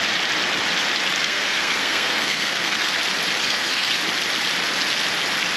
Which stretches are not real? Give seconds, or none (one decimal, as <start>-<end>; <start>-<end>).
1.2-2.9; 3.4-4.0